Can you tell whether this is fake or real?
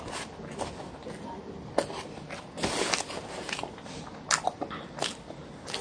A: real